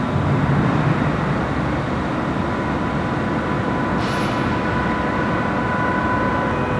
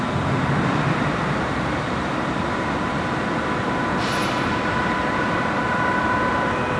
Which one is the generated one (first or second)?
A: second